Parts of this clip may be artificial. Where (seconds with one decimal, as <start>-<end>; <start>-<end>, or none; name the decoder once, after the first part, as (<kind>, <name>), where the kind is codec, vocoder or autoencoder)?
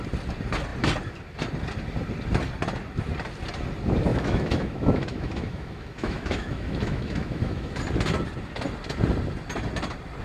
4.1-7.8 (autoencoder, DAC-VAE)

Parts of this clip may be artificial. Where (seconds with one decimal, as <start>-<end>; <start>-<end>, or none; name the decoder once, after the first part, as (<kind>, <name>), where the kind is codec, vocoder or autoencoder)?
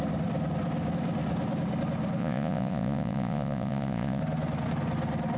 2.2-4.2 (vocoder, Vocos)